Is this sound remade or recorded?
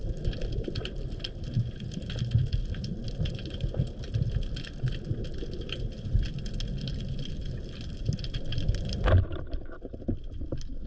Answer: recorded